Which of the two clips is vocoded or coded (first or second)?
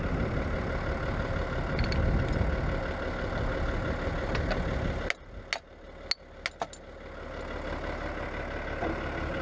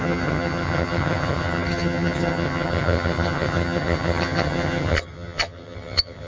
second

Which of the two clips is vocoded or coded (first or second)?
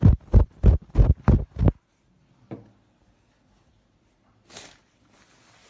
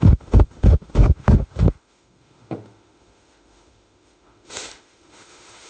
second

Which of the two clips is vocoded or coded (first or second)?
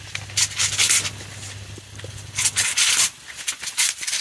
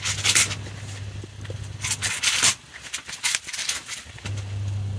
first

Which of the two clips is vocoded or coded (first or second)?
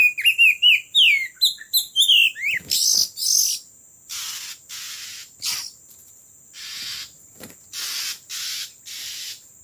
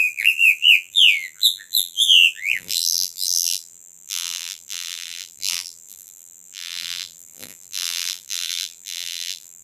second